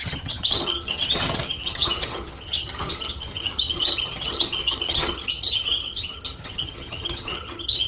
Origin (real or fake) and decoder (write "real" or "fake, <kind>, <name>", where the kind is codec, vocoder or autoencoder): fake, vocoder, HiFi-GAN